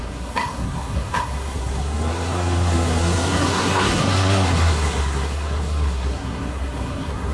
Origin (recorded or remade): remade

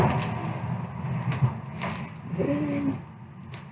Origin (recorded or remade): recorded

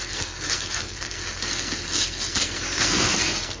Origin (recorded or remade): remade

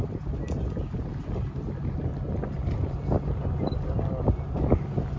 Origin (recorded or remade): recorded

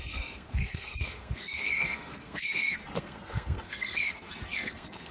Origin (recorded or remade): remade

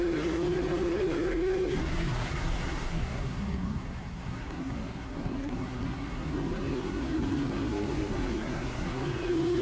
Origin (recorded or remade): remade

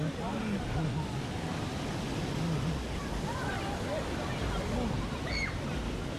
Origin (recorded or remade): recorded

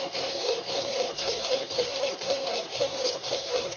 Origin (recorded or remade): remade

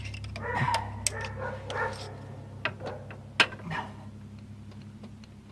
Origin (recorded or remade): recorded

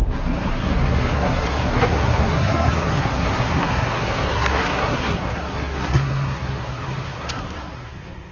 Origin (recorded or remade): remade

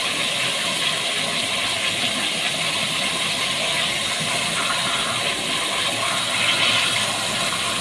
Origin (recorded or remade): recorded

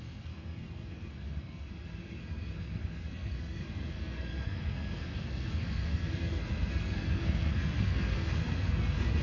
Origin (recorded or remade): remade